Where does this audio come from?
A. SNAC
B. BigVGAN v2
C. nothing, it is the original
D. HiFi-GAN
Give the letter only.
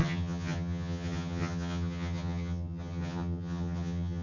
D